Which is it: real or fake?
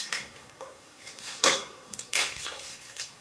fake